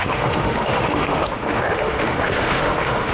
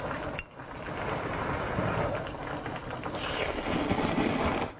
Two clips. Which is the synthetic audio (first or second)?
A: first